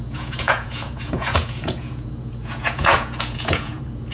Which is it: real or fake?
fake